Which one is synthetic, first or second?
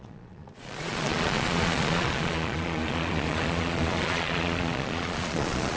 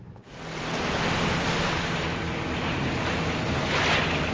first